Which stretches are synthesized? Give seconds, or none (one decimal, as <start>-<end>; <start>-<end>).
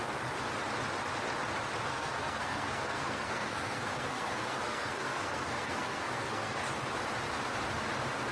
1.9-6.6